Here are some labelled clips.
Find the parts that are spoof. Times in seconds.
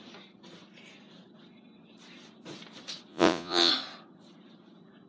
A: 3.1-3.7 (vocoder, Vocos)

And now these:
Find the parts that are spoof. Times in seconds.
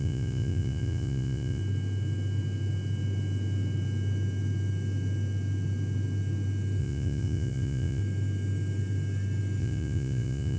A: 0.0-1.6 (vocoder, Vocos); 6.8-8.0; 9.6-10.6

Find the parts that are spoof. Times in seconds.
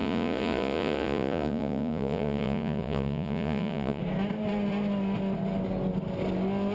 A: 0.0-4.0 (vocoder, Vocos)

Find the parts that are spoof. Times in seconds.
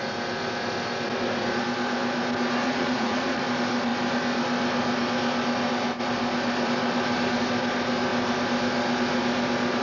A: 2.6-3.4 (vocoder, Vocos)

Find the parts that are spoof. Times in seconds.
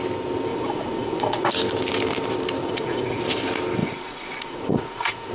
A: 0.5-1.5 (vocoder, Vocos); 2.6-3.2; 3.8-5.3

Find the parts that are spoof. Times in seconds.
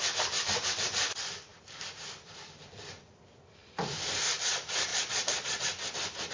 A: 4.9-5.7 (vocoder, Vocos)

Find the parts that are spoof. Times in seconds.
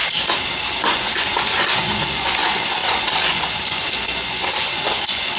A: 0.8-5.4 (vocoder, Vocos)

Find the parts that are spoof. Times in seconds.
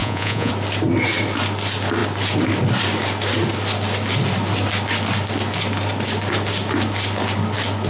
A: 0.0-0.5 (vocoder, Vocos)